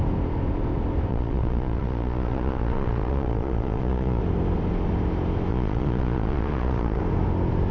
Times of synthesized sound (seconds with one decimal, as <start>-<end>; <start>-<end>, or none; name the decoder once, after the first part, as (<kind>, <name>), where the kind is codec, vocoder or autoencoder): 1.1-4.2 (vocoder, Vocos); 5.5-7.0